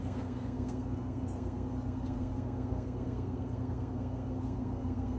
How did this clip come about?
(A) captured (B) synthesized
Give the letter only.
B